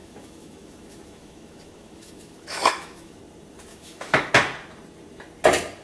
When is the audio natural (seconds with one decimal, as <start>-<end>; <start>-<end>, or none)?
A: 3.2-3.7; 4.3-5.8